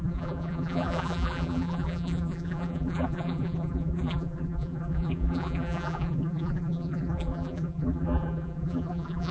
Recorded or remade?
remade